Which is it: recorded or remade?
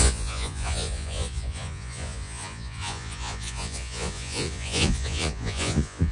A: remade